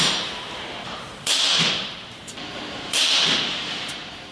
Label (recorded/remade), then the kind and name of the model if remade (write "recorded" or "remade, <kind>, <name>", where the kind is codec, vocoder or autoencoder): remade, vocoder, BigVGAN v2